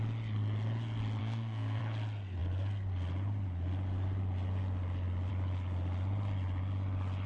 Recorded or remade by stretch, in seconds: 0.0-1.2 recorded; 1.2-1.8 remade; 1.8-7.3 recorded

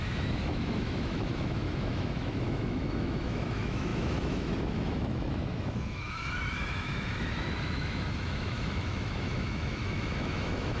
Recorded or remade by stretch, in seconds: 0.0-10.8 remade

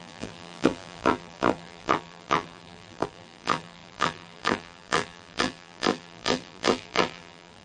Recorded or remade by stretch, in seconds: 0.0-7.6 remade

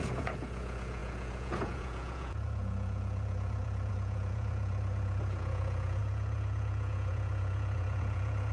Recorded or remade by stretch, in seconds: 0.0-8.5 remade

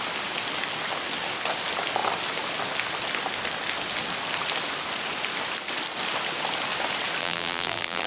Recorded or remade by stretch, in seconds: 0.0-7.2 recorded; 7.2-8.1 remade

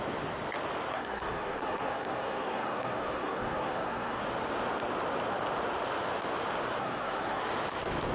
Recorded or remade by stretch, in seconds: 0.0-0.9 recorded; 0.9-4.2 remade; 4.2-6.8 recorded; 6.8-7.4 remade; 7.4-8.1 recorded

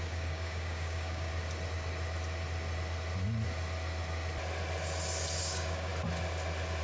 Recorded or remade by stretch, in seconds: 0.0-1.3 remade; 1.3-5.4 recorded; 5.4-5.9 remade; 5.9-6.8 recorded